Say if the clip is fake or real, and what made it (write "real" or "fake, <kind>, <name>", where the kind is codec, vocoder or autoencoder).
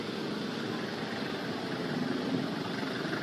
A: real